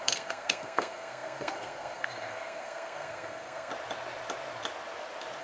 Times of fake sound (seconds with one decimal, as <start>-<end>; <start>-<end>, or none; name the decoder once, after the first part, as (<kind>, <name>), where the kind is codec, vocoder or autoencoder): 0.0-3.7 (codec, SNAC)